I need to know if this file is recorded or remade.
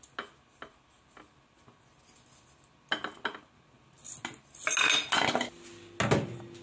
recorded